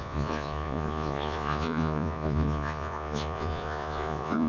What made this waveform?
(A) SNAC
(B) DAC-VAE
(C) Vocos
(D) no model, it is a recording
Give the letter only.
C